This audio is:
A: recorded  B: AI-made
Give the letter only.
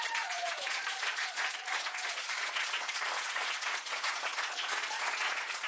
B